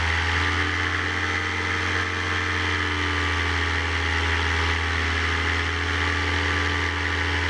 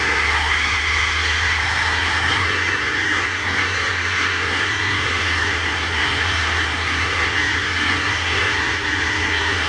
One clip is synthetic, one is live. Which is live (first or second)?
first